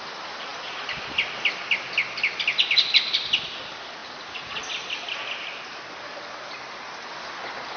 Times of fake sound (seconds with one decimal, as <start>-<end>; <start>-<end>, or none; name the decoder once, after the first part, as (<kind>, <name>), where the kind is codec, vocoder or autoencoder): 4.0-4.6 (vocoder, Vocos)